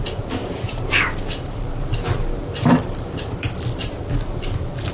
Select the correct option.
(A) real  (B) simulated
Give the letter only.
B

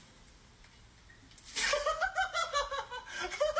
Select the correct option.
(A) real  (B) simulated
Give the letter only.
A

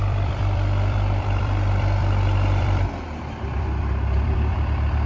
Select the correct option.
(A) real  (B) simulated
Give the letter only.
B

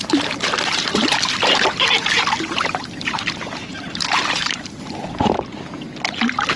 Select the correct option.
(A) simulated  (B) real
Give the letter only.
A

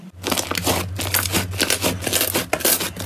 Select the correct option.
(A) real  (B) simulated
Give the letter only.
A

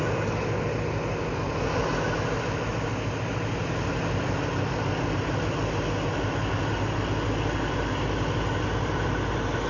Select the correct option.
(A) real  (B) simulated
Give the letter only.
A